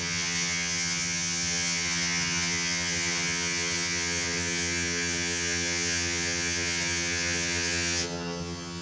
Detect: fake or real fake